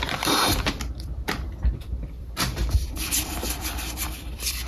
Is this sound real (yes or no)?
no